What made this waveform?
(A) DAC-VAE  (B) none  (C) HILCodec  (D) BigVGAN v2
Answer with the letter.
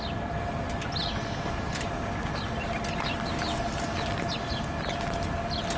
B